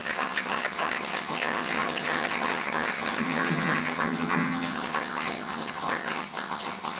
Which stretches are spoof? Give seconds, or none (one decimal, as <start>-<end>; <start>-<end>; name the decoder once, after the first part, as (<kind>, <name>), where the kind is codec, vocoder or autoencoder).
0.0-7.0 (vocoder, HiFi-GAN)